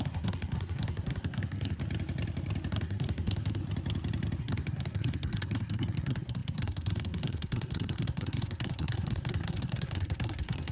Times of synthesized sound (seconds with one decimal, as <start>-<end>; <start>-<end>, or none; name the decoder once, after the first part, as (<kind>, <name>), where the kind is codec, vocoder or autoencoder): 0.0-1.8 (codec, SNAC); 2.7-3.6; 4.4-10.7